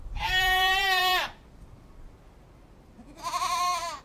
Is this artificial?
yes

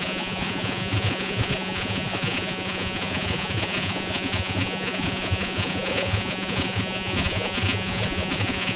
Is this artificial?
yes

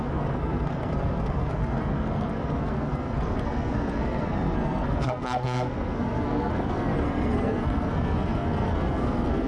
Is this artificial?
yes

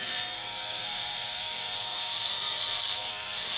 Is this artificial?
yes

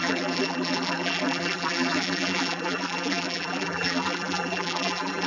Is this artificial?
yes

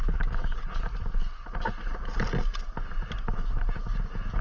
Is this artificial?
no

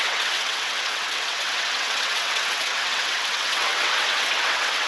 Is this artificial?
yes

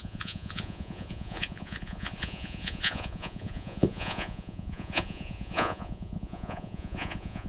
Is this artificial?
yes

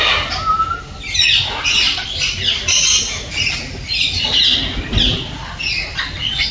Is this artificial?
no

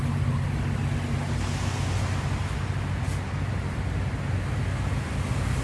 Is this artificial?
no